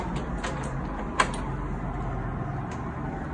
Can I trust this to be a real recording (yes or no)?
yes